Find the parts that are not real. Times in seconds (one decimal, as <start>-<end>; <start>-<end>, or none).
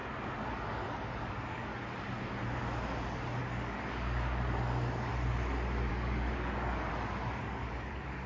0.5-1.7; 3.4-5.1; 5.9-6.9; 7.4-8.3